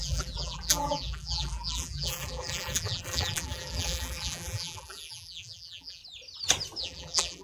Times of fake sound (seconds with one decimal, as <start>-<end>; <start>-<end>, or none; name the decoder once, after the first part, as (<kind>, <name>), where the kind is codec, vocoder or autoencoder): 0.0-6.0 (vocoder, BigVGAN v2); 6.8-7.4